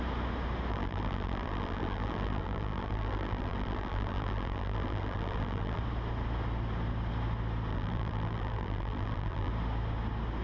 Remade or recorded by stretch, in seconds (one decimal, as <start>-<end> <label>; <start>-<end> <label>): 0.0-0.7 recorded; 0.7-5.8 remade; 5.8-7.7 recorded; 7.7-9.5 remade; 9.5-10.4 recorded